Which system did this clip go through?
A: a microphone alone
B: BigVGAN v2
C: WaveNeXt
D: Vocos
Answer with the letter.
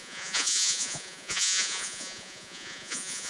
D